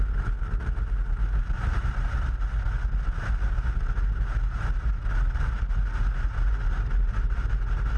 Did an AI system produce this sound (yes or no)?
no